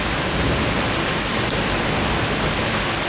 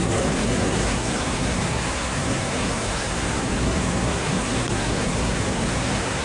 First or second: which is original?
first